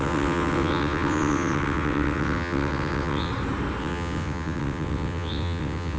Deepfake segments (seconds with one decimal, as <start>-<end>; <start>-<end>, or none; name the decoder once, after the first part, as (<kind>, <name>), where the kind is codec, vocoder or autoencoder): 0.0-3.3 (vocoder, WaveNeXt); 3.8-6.0